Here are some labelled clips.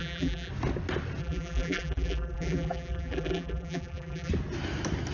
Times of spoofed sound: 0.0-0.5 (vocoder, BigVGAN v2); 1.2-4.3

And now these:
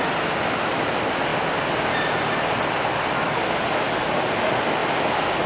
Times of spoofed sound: none

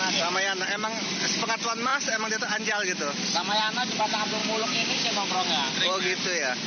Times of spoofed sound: 4.4-5.3 (codec, DAC)